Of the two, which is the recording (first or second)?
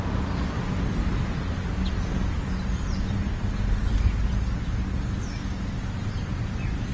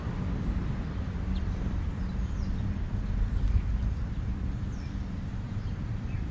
first